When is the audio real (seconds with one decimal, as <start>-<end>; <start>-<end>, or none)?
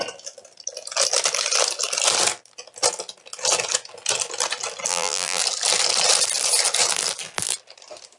0.0-4.9; 5.4-8.2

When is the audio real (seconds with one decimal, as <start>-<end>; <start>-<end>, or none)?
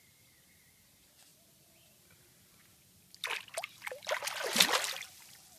0.0-5.6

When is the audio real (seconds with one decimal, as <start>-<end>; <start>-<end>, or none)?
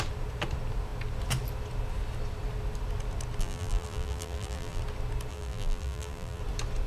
0.0-3.4; 4.8-5.3; 6.4-6.9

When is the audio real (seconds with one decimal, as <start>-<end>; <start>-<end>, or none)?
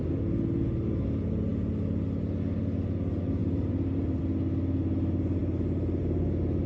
0.0-3.4; 4.2-6.7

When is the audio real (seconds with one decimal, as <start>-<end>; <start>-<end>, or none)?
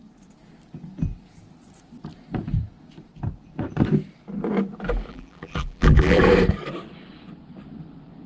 0.0-5.1; 6.2-8.3